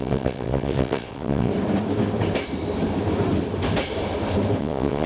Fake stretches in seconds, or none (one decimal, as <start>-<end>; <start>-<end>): 0.0-1.5; 4.6-5.1